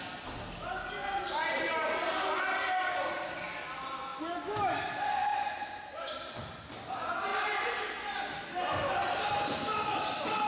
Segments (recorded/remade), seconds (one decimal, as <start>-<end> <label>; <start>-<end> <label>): 0.0-1.0 recorded; 1.0-1.9 remade; 1.9-5.3 recorded; 5.3-6.0 remade; 6.0-10.5 recorded